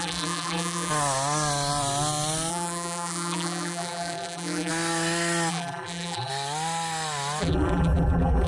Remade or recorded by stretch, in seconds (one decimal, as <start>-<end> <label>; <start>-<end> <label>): 0.0-0.9 remade; 0.9-2.5 recorded; 2.5-4.7 remade; 4.7-5.5 recorded; 5.5-6.3 remade; 6.3-7.4 recorded; 7.4-8.5 remade